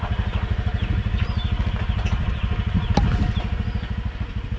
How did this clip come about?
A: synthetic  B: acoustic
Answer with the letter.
B